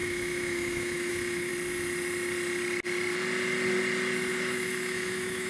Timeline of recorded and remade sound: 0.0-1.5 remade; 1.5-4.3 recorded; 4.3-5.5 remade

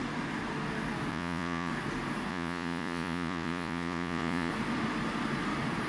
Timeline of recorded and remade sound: 0.0-1.1 recorded; 1.1-1.7 remade; 1.7-2.3 recorded; 2.3-4.5 remade; 4.5-5.9 recorded

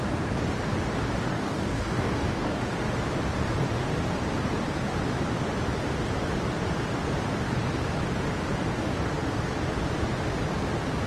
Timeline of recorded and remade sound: 0.0-1.3 recorded; 1.3-2.6 remade; 2.6-11.1 recorded

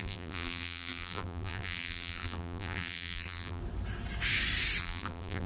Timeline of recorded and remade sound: 0.0-3.6 remade; 3.6-4.8 recorded; 4.8-5.5 remade

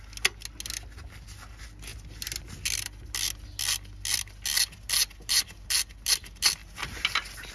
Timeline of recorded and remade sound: 0.0-7.5 recorded

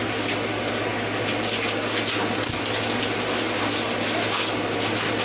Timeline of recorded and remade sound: 0.0-5.2 recorded